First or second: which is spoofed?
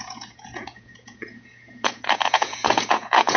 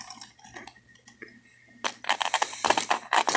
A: first